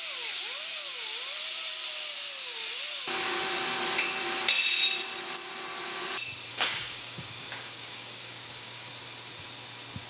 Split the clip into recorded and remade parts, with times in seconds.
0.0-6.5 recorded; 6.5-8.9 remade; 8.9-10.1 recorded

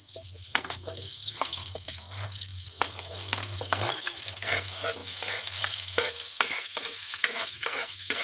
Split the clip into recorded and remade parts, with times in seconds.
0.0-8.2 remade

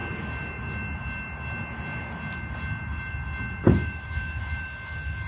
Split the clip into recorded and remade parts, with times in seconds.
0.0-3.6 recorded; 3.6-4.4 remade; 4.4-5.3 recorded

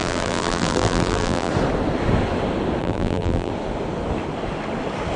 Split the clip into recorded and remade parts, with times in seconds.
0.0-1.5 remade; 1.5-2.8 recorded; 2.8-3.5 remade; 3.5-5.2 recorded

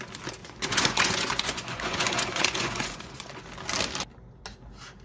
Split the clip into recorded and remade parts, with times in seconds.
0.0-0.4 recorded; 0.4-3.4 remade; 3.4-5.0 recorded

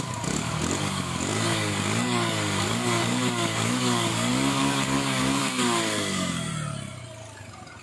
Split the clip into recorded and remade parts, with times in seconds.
0.0-6.5 remade; 6.5-7.8 recorded

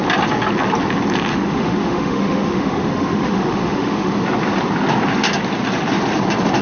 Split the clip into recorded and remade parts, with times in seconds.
0.0-1.3 recorded; 1.3-4.1 remade; 4.1-6.6 recorded